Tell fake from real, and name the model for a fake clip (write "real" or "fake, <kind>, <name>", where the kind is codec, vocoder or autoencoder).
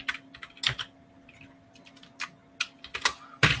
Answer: real